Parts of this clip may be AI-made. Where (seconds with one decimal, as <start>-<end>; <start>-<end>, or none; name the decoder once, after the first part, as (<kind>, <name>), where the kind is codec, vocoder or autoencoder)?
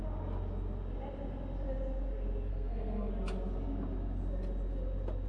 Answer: 2.5-3.1 (codec, SNAC)